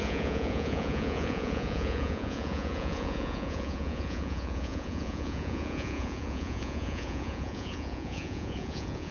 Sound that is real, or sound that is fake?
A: fake